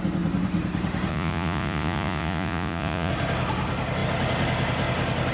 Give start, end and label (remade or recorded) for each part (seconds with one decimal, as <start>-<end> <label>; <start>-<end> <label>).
0.0-1.1 recorded; 1.1-3.1 remade; 3.1-5.3 recorded